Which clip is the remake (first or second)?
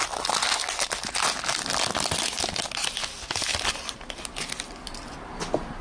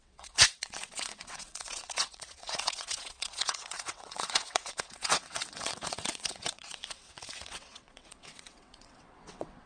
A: second